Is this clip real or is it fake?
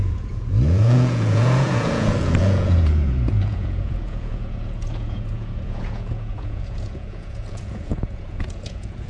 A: fake